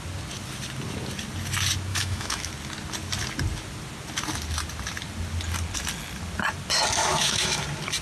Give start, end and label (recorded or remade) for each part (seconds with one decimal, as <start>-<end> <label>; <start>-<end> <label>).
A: 0.0-1.9 recorded; 1.9-2.5 remade; 2.5-7.0 recorded; 7.0-7.6 remade; 7.6-8.0 recorded